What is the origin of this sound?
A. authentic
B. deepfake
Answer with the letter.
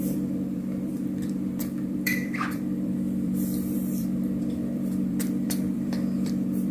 B